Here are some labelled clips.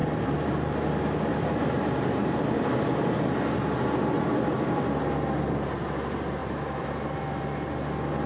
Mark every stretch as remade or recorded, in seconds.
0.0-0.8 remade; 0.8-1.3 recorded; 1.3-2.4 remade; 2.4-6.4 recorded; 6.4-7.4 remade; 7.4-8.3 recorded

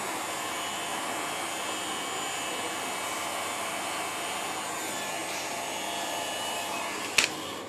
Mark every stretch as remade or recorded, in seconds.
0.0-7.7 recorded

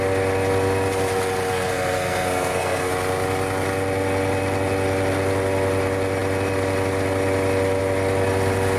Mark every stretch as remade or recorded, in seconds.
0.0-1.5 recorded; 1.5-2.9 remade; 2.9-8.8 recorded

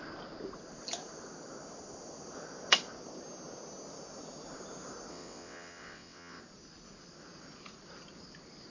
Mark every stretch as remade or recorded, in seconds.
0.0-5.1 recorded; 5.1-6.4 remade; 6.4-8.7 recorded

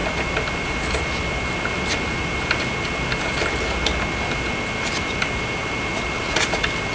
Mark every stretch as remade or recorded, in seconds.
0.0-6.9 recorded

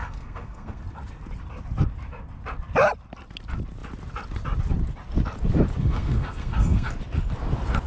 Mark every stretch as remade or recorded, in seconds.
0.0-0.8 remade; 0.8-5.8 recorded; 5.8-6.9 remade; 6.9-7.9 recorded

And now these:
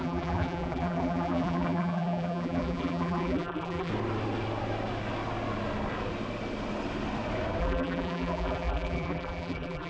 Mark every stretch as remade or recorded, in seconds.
0.0-3.9 remade; 3.9-7.6 recorded; 7.6-9.9 remade